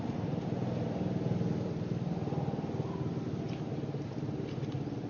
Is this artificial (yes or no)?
no